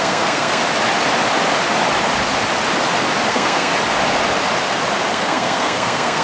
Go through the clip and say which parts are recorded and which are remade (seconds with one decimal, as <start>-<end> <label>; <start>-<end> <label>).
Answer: 0.0-0.6 remade; 0.6-3.3 recorded; 3.3-3.7 remade; 3.7-5.1 recorded; 5.1-6.2 remade